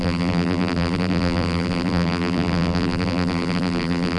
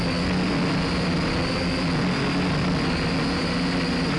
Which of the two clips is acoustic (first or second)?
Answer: second